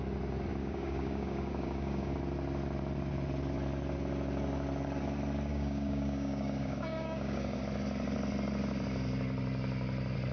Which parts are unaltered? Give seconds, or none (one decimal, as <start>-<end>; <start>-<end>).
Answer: 0.0-0.6; 2.1-5.5; 7.6-10.3